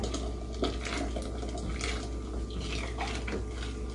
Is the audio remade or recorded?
recorded